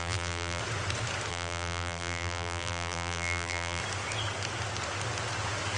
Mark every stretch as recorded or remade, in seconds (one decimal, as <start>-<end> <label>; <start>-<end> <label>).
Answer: 0.0-0.6 remade; 0.6-1.3 recorded; 1.3-3.8 remade; 3.8-5.8 recorded